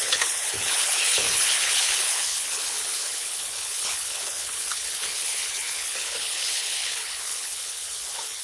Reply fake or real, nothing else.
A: fake